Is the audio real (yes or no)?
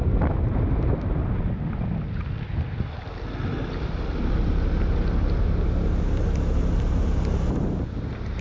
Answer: yes